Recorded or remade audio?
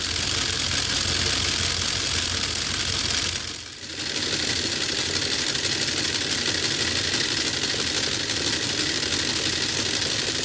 recorded